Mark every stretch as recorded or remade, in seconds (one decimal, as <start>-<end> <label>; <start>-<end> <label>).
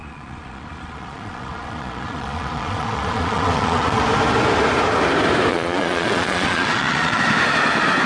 0.0-4.0 remade; 4.0-5.5 recorded; 5.5-7.2 remade; 7.2-8.1 recorded